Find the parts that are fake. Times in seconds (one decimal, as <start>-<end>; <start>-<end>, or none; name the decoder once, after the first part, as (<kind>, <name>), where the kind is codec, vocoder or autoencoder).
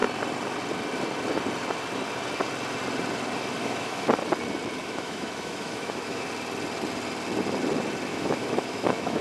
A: 3.6-4.1 (autoencoder, DAC-VAE); 4.8-6.3; 8.1-9.2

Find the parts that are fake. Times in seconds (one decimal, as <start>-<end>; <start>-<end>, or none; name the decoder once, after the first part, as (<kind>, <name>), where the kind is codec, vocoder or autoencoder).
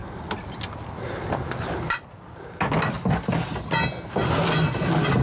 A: none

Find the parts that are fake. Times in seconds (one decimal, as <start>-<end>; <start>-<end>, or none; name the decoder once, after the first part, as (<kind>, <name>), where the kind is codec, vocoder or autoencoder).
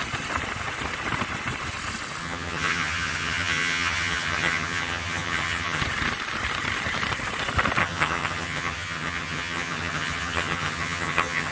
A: 2.2-5.8 (vocoder, HiFi-GAN); 7.8-11.5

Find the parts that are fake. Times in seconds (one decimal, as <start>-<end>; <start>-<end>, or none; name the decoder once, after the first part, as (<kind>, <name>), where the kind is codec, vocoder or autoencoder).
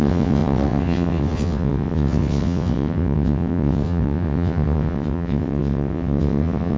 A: 0.0-6.8 (vocoder, WaveNeXt)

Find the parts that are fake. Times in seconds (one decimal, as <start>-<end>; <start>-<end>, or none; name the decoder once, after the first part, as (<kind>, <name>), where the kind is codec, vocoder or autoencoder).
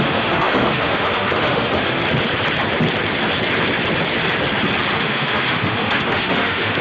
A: 0.0-2.0 (autoencoder, DAC-VAE); 5.0-6.8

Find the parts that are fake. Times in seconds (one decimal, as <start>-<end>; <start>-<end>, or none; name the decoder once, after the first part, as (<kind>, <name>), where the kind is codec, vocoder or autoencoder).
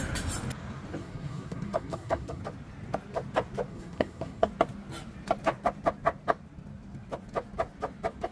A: 1.0-2.4 (codec, SNAC); 3.7-4.5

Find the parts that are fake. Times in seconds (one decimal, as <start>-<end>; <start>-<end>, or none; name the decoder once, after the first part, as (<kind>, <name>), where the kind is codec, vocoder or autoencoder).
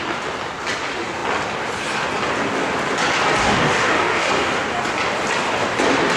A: 3.4-4.3 (autoencoder, DAC-VAE)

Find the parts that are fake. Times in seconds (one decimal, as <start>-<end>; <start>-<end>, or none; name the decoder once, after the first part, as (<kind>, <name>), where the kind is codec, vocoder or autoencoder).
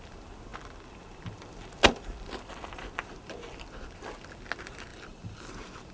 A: 4.9-5.5 (vocoder, BigVGAN v2)